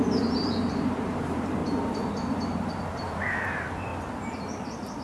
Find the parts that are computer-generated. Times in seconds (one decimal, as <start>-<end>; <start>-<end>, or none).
0.0-1.6; 2.9-3.9